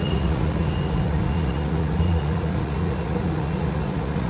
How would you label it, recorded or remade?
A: remade